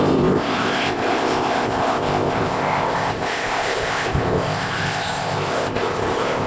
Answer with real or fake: fake